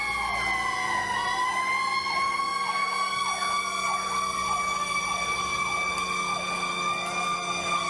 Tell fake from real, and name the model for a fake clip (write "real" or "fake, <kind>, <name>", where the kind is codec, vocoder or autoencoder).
real